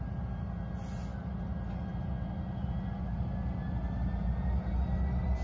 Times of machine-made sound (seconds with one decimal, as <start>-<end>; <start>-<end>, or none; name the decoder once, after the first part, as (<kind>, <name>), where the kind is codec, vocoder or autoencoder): none